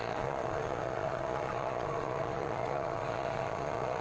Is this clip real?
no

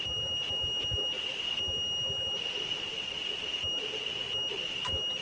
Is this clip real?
yes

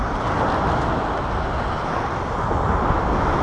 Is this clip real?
yes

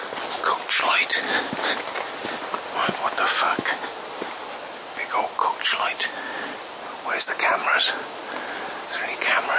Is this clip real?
yes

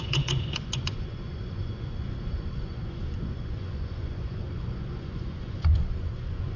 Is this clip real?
no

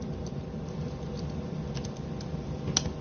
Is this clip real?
yes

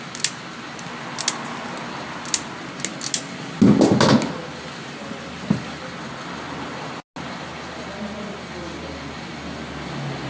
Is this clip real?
yes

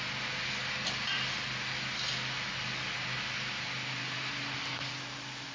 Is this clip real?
yes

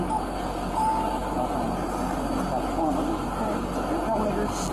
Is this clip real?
yes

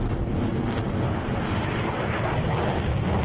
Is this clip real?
yes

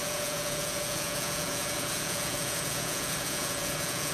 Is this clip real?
no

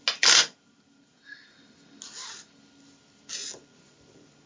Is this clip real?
yes